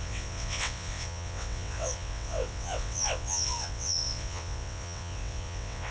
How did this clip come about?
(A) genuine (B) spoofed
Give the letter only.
B